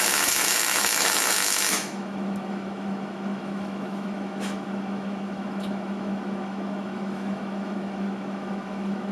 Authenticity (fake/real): fake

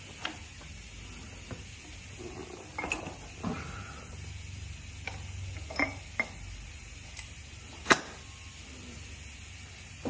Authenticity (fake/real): real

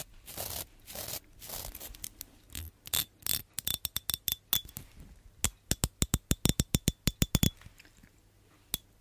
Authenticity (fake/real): real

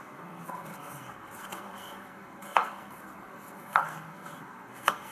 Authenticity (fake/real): fake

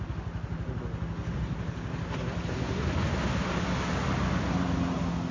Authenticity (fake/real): real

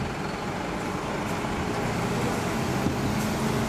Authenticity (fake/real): real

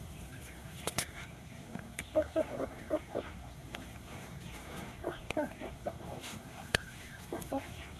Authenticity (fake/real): fake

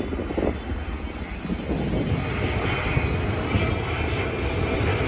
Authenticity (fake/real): real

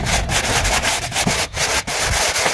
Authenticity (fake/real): real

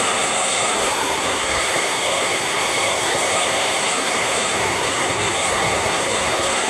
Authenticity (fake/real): fake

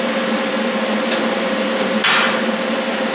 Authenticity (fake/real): real